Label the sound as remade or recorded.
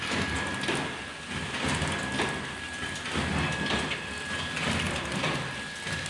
recorded